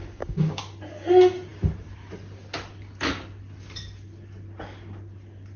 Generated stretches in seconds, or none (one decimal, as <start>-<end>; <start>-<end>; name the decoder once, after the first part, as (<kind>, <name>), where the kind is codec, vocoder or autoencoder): 0.0-0.6 (codec, DAC)